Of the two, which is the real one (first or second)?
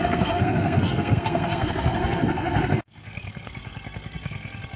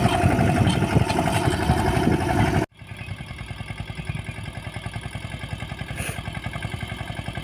second